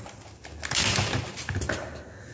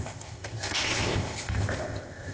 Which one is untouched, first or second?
first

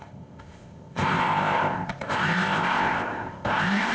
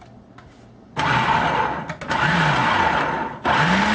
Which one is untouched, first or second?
second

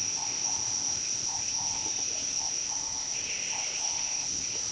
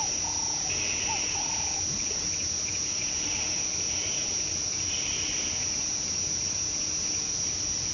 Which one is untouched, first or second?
second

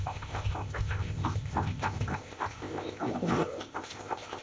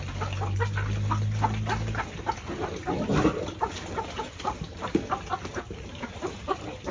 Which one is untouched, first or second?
second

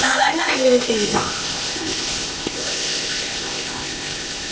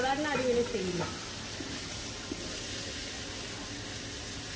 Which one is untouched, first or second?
second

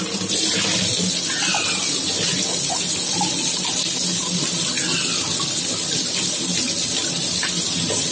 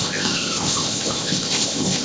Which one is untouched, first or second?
first